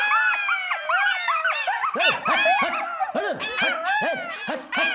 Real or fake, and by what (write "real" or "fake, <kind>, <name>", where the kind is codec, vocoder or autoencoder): real